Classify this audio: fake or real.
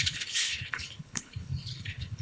fake